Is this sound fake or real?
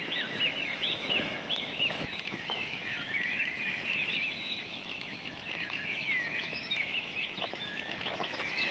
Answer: fake